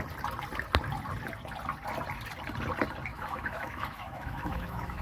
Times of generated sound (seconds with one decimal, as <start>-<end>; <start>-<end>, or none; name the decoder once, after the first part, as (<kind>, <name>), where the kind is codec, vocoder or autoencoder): 3.1-5.0 (autoencoder, DAC-VAE)